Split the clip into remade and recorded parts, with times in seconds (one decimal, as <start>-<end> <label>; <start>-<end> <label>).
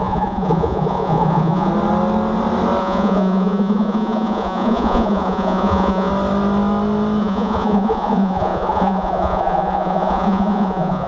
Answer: 0.0-1.7 remade; 1.7-2.8 recorded; 2.8-6.1 remade; 6.1-7.2 recorded; 7.2-11.1 remade